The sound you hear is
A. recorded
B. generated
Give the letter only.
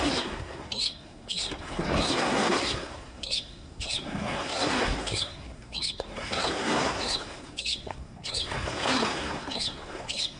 B